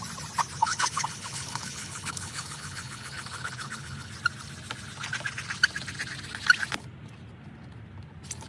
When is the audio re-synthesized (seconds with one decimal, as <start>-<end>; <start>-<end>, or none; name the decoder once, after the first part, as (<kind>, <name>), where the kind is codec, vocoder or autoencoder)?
0.6-4.1 (codec, HILCodec)